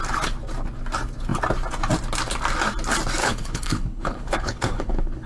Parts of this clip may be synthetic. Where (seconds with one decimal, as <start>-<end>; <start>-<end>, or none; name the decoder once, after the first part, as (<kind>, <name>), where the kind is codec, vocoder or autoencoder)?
3.2-5.3 (codec, HILCodec)